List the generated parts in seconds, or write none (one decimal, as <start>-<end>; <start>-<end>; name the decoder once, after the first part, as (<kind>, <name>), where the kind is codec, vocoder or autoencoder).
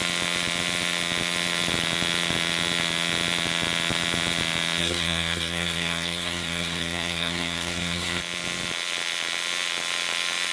4.8-8.2 (codec, SNAC)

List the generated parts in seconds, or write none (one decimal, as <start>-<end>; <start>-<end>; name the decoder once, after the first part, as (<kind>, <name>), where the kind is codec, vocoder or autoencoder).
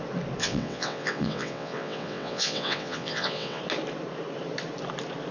0.4-3.6 (vocoder, WaveNeXt)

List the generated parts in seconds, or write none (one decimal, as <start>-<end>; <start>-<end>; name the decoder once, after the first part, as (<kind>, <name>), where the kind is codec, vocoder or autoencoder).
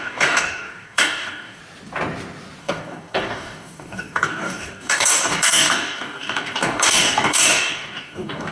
0.0-1.6 (codec, DAC); 2.6-8.5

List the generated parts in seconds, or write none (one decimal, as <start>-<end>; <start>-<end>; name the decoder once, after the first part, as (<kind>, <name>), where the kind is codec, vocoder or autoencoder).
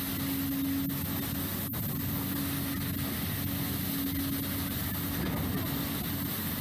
none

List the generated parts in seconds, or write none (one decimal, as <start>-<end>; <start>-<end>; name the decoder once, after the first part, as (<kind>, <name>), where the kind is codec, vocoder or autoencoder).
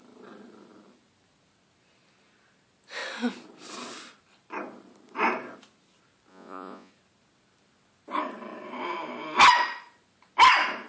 6.3-6.9 (vocoder, Vocos)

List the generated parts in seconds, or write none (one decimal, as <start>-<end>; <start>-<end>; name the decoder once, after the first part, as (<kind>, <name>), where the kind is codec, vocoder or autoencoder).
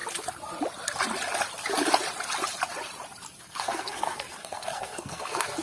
3.4-5.6 (codec, SNAC)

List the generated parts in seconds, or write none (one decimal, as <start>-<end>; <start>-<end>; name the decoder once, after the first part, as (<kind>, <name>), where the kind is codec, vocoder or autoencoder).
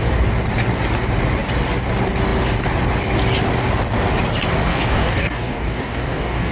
4.7-6.5 (codec, DAC)